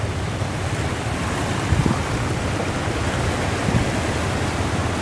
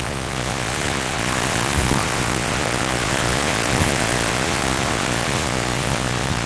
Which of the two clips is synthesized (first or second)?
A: second